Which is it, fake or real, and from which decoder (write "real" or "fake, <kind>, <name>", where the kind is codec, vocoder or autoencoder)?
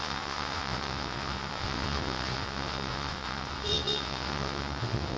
fake, vocoder, WaveNeXt